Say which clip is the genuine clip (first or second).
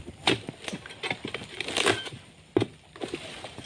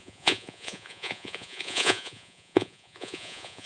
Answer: first